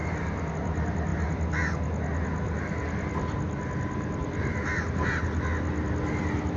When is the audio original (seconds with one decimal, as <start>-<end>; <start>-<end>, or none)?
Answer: 0.0-6.6